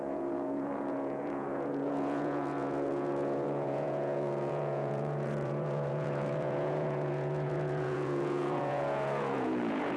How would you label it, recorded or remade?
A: remade